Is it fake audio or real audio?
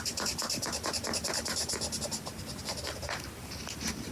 real